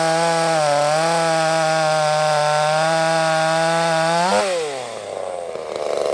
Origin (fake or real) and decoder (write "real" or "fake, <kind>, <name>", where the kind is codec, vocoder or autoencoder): real